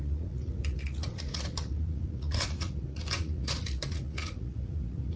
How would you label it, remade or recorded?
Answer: remade